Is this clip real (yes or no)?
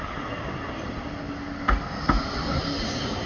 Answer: yes